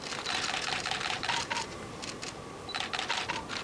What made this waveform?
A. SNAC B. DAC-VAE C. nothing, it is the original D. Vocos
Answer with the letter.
C